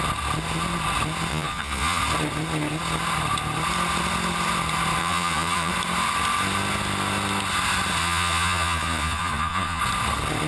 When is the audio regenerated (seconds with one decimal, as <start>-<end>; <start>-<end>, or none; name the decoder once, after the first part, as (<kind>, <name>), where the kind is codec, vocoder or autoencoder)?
1.3-2.0 (vocoder, Vocos); 5.0-5.7; 8.0-9.8